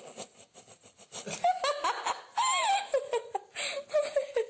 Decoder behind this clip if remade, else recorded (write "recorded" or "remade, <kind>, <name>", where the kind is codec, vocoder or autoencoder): recorded